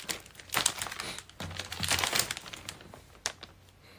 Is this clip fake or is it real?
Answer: real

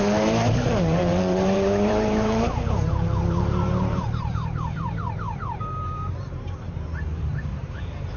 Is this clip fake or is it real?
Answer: fake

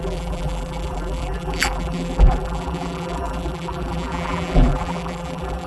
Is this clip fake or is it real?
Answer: fake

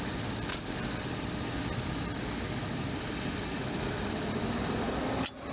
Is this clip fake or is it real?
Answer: real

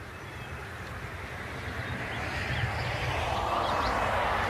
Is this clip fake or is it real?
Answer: real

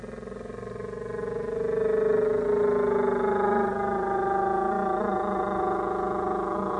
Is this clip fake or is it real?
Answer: real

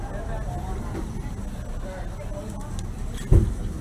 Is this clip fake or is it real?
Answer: real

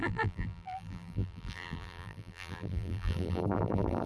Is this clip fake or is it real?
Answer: fake